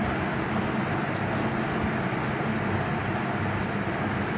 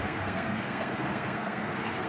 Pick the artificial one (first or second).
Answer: second